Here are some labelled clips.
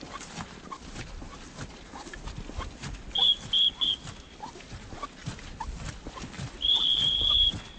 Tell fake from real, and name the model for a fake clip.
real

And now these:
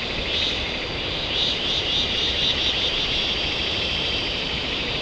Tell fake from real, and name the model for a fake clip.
fake, vocoder, BigVGAN v2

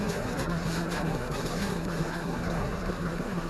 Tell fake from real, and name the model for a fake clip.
fake, codec, SNAC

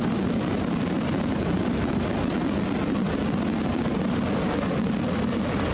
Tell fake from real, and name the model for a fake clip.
real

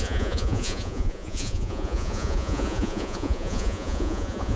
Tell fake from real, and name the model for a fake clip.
fake, vocoder, Vocos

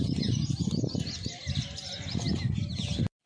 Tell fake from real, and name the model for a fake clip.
real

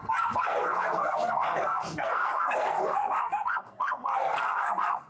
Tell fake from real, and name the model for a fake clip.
fake, codec, SNAC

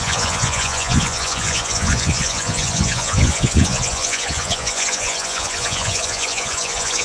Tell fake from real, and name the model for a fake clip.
fake, vocoder, Vocos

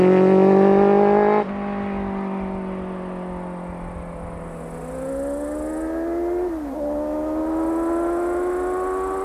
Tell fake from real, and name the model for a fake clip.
real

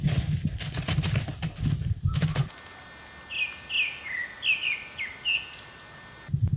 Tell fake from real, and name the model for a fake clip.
real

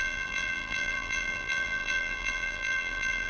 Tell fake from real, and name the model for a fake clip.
fake, vocoder, BigVGAN v2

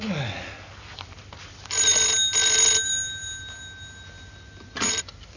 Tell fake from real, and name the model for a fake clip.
real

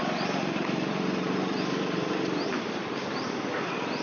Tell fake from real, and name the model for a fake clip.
real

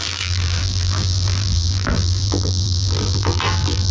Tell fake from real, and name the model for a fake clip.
fake, vocoder, BigVGAN v2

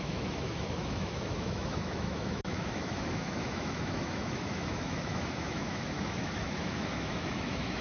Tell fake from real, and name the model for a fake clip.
fake, autoencoder, DAC-VAE